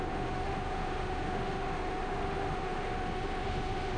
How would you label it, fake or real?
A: fake